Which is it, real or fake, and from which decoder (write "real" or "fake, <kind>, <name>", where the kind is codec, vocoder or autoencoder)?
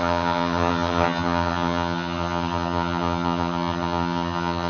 fake, vocoder, HiFi-GAN